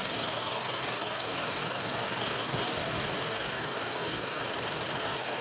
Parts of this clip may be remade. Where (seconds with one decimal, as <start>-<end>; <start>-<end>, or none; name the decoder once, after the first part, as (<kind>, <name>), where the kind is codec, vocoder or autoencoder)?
0.0-4.4 (codec, DAC); 5.0-5.4